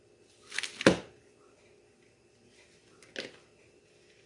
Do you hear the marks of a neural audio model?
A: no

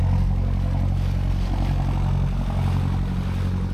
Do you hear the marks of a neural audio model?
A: no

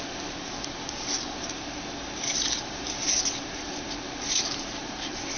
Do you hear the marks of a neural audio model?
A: yes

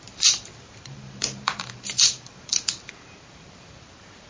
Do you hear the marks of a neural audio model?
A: yes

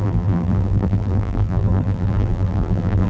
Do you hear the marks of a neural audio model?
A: yes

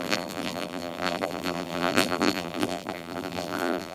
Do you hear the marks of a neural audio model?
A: yes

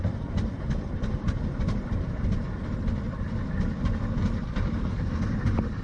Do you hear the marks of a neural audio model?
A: yes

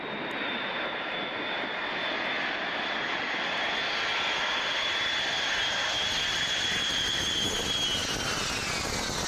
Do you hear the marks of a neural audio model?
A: no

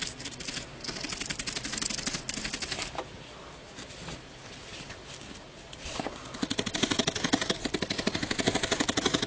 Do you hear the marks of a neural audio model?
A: no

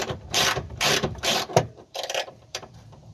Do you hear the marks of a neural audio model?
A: yes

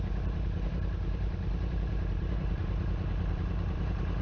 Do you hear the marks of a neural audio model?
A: yes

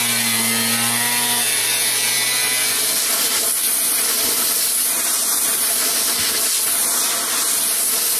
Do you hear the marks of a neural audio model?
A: yes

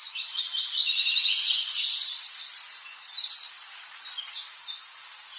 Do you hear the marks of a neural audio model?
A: yes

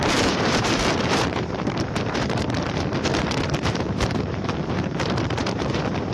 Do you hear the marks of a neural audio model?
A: yes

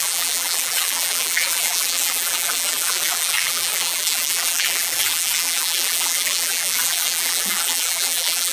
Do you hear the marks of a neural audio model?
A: yes